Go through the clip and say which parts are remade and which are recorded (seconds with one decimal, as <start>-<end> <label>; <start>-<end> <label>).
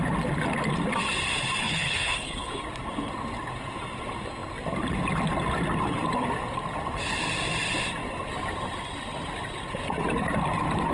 0.0-1.6 recorded; 1.6-2.5 remade; 2.5-10.9 recorded